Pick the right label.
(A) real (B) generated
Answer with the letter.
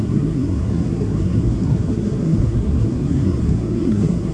B